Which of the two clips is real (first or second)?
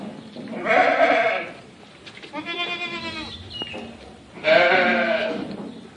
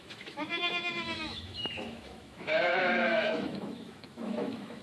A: first